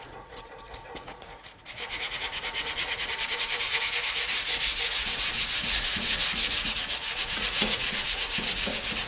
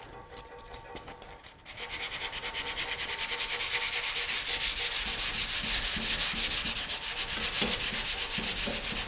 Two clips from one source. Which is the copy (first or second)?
first